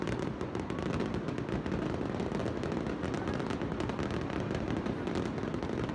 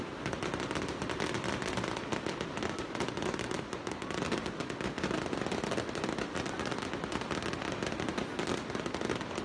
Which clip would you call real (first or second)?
second